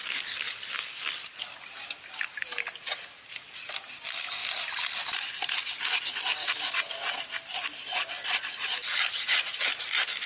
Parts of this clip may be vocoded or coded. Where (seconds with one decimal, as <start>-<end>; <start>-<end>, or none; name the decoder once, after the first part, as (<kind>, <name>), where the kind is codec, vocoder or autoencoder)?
none